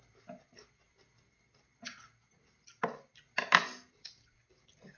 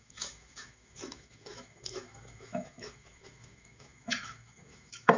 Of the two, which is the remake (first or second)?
second